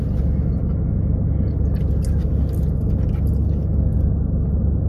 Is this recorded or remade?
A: recorded